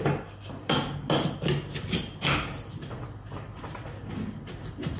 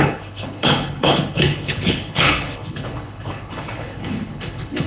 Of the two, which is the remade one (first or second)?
second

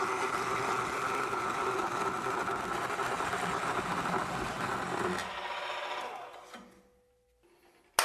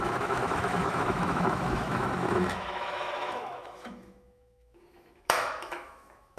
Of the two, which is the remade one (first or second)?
second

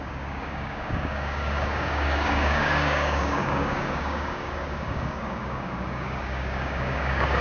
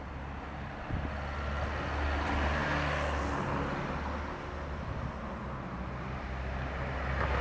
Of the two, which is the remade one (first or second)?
first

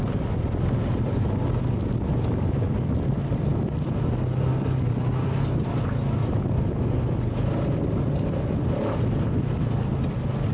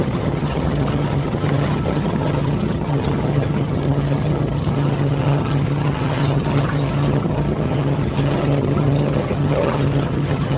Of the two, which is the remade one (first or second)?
second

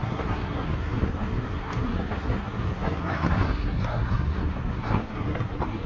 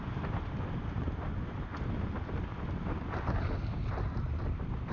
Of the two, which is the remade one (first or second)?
first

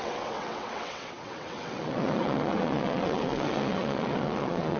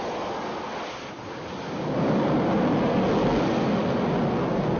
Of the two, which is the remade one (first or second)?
first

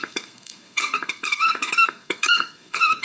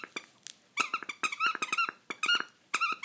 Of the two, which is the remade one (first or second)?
first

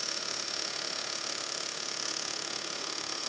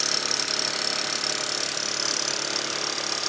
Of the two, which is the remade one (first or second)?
first